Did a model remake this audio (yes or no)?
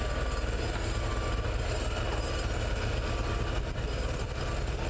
no